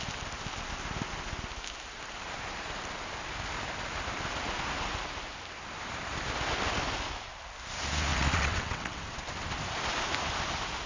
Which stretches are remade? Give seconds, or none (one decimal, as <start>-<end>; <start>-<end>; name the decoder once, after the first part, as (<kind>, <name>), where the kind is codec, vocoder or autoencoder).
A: 8.1-9.0 (vocoder, WaveNeXt)